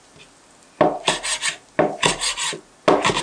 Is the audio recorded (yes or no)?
yes